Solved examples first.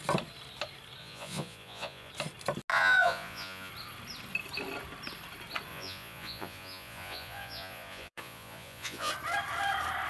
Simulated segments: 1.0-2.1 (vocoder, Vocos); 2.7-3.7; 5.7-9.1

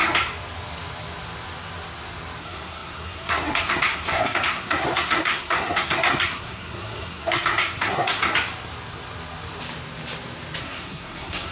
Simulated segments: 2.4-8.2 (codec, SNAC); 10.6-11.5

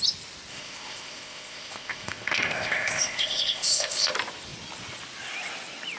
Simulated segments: 0.5-4.1 (codec, ZipCodec)

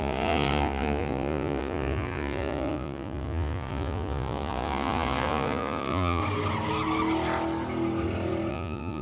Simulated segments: 0.0-6.2 (vocoder, Vocos); 8.5-9.0

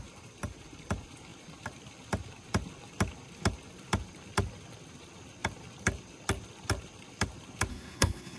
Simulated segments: 7.7-8.4 (codec, SNAC)

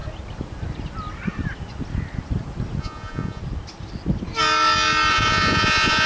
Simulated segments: 2.8-3.4 (vocoder, Vocos); 5.1-6.1

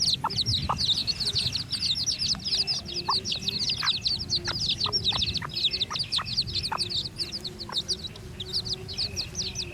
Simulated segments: none